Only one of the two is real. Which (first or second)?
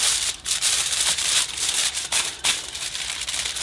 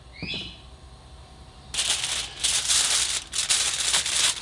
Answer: second